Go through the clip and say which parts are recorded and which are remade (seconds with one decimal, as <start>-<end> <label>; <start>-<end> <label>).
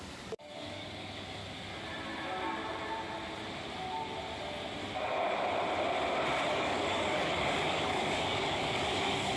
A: 0.0-1.4 remade; 1.4-6.5 recorded; 6.5-9.4 remade